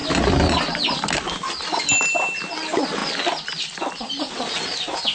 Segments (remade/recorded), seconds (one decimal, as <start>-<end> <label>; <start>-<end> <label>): 0.0-5.1 recorded